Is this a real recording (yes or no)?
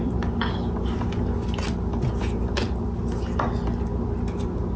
yes